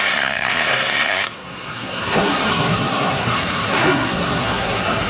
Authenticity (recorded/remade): remade